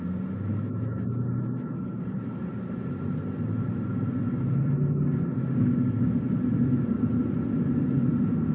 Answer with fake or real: real